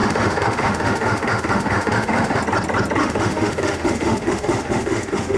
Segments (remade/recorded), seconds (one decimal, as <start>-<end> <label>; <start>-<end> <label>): 0.0-2.4 remade; 2.4-3.0 recorded; 3.0-5.4 remade